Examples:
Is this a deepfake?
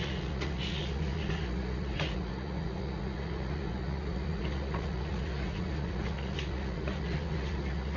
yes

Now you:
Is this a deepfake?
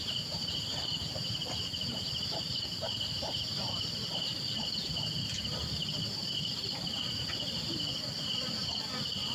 yes